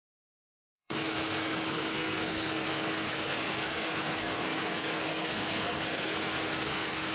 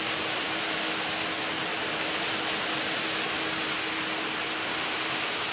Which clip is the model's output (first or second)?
first